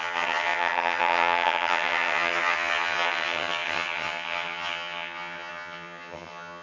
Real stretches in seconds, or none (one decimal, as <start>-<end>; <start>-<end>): none